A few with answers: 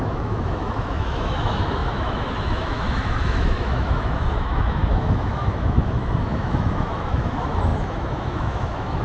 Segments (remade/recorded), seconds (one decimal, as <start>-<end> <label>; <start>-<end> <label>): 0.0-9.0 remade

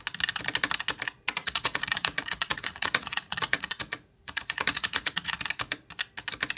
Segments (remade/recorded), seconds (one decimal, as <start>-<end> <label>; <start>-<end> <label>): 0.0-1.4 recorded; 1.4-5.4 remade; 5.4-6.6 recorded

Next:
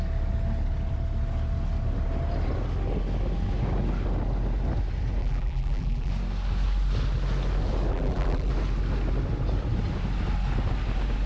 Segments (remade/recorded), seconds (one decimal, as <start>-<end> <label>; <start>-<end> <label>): 0.0-5.2 recorded; 5.2-6.1 remade; 6.1-7.9 recorded; 7.9-8.5 remade; 8.5-11.3 recorded

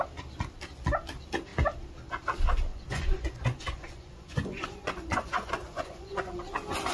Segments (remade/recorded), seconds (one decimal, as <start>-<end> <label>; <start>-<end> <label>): 0.0-2.7 recorded; 2.7-6.4 remade; 6.4-6.9 recorded